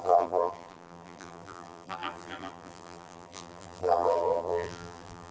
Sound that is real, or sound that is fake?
fake